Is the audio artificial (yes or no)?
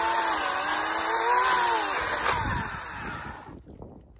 no